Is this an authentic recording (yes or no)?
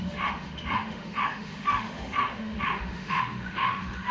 no